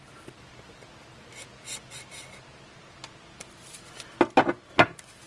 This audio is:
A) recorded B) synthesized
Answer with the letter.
A